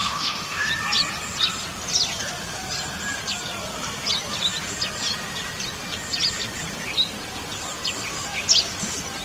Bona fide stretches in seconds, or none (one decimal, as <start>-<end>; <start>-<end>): 0.7-9.2